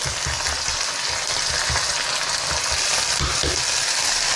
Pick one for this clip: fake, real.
real